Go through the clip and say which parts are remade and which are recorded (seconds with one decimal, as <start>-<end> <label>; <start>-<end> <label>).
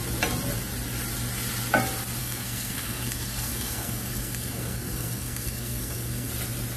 0.0-2.2 recorded; 2.2-6.3 remade; 6.3-6.8 recorded